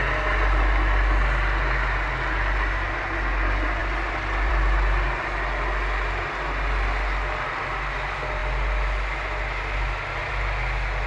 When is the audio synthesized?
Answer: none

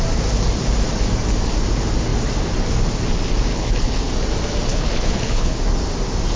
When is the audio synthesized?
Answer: 3.5-4.1 (codec, HILCodec); 4.7-5.6

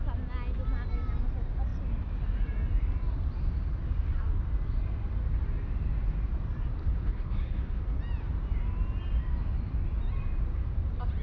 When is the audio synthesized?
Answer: 6.8-8.0 (codec, HILCodec)

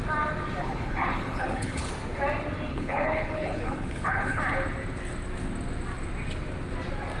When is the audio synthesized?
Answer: 0.6-1.9 (codec, HILCodec); 2.7-4.4